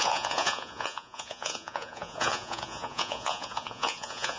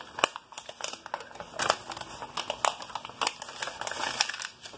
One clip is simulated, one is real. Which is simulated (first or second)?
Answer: first